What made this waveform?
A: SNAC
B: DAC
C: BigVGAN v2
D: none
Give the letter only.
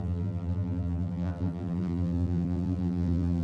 C